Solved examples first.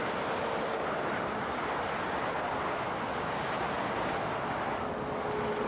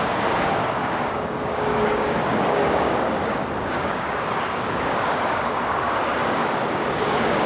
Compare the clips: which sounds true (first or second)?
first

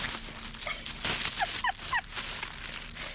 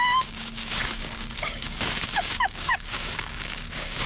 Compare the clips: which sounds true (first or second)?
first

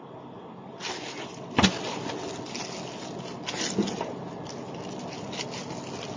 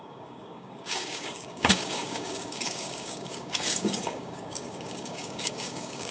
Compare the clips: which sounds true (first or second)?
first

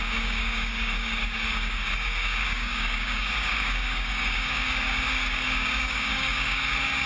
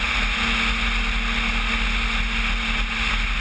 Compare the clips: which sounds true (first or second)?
second